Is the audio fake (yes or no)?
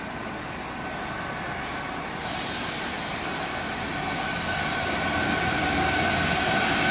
no